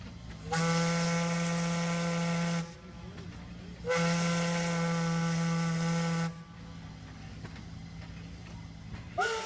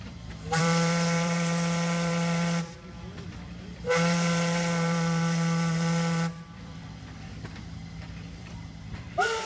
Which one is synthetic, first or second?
second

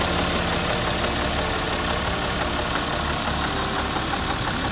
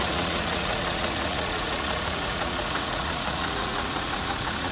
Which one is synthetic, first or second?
second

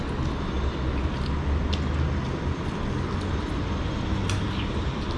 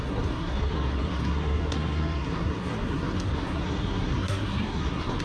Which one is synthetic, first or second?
second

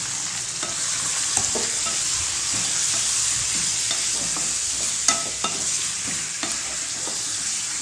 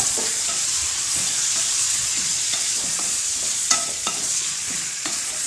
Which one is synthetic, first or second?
second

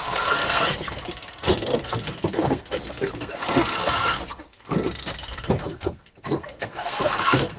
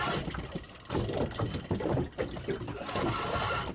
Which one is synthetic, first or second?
first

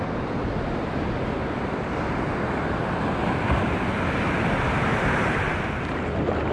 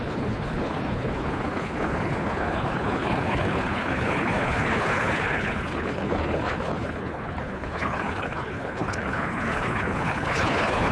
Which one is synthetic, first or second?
second